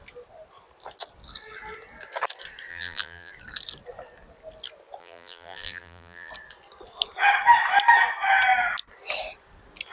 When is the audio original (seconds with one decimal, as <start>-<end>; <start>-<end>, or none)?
0.0-2.7; 3.3-5.0; 6.3-9.9